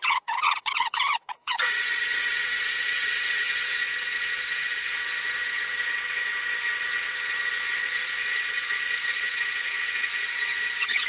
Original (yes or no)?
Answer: no